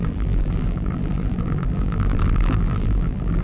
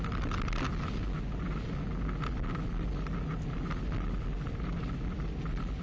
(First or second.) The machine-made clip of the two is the first